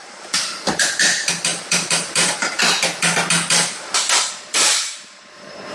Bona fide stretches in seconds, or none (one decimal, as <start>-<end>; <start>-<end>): 0.0-1.5; 2.6-4.5